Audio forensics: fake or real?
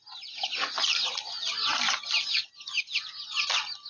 real